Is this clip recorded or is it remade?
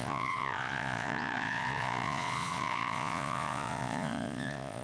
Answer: remade